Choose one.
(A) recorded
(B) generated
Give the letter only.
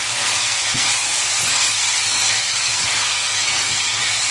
B